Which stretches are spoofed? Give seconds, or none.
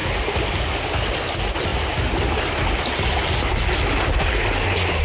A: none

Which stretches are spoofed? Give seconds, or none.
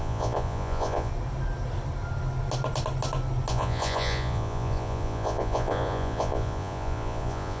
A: 0.0-1.1; 3.5-7.6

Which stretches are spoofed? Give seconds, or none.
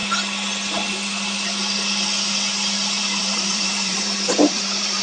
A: 3.0-5.0